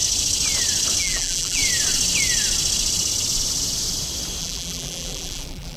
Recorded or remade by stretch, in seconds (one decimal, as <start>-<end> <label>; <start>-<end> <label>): 0.0-1.0 recorded; 1.0-1.6 remade; 1.6-4.4 recorded; 4.4-5.8 remade